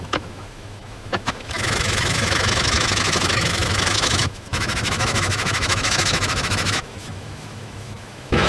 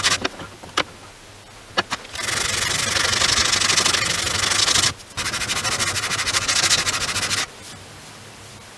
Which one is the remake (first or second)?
first